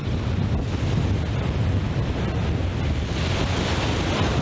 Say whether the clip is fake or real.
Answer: real